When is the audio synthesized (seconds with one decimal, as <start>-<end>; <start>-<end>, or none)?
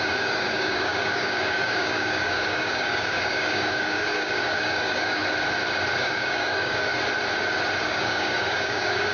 0.0-5.2; 6.0-6.9; 7.8-9.1